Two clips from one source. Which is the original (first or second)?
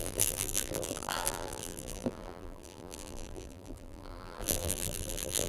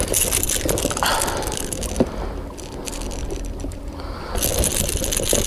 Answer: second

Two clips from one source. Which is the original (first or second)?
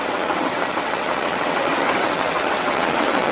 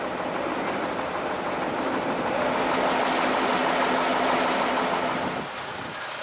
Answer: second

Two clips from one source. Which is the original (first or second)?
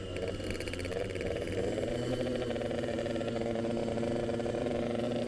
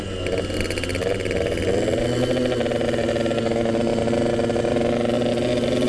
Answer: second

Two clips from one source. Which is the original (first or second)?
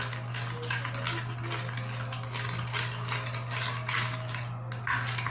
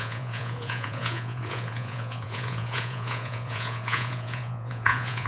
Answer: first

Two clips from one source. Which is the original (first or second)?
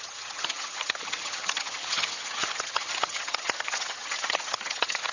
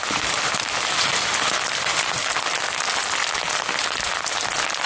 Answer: second